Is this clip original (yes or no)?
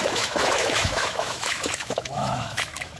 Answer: no